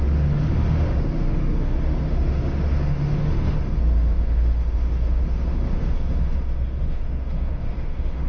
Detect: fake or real fake